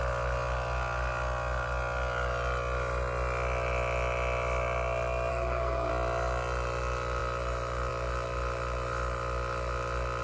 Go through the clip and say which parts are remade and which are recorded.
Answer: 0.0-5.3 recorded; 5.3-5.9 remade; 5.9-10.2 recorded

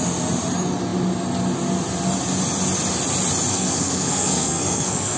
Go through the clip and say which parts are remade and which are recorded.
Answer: 0.0-3.5 recorded; 3.5-5.2 remade

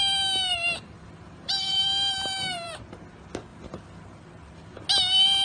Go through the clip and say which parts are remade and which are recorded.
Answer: 0.0-0.5 recorded; 0.5-2.8 remade; 2.8-3.5 recorded; 3.5-4.8 remade; 4.8-5.4 recorded

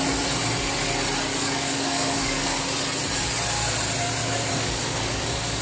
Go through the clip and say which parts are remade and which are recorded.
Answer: 0.0-1.3 recorded; 1.3-2.6 remade; 2.6-4.2 recorded; 4.2-5.6 remade